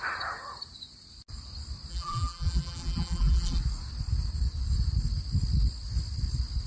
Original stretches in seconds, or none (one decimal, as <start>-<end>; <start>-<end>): 0.0-1.9; 3.6-6.7